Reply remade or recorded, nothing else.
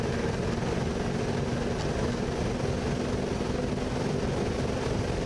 recorded